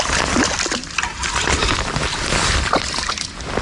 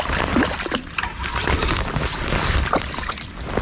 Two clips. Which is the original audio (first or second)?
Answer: first